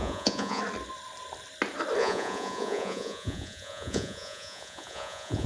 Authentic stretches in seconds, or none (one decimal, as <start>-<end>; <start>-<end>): 0.6-2.0